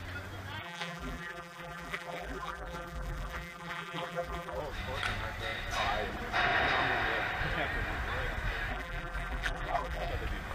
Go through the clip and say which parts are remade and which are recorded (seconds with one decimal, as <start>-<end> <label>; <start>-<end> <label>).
0.0-0.6 recorded; 0.6-4.6 remade; 4.6-8.7 recorded; 8.7-10.1 remade; 10.1-10.5 recorded